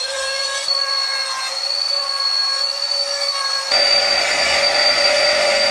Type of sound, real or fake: fake